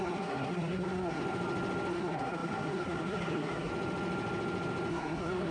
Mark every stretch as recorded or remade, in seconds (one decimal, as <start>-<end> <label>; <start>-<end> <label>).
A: 0.0-1.2 remade; 1.2-1.9 recorded; 1.9-3.7 remade; 3.7-4.9 recorded; 4.9-5.5 remade